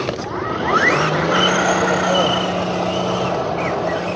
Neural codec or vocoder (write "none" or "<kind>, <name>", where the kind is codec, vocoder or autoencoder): none